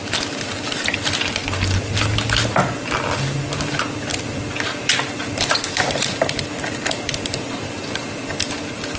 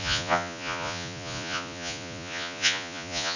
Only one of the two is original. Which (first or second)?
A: first